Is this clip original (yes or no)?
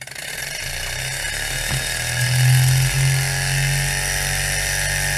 yes